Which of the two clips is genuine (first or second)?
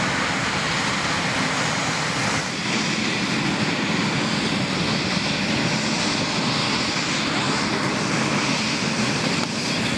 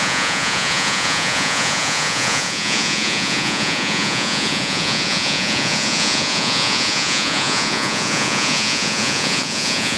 first